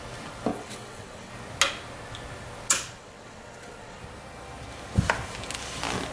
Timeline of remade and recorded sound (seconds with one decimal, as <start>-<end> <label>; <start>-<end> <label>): 0.0-0.5 recorded; 0.5-1.3 remade; 1.3-3.0 recorded; 3.0-4.0 remade; 4.0-6.1 recorded